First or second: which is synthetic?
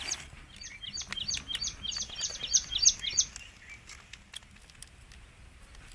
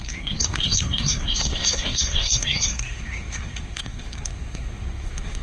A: second